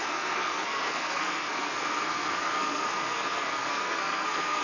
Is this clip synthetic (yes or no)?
yes